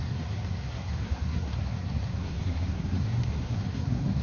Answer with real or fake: fake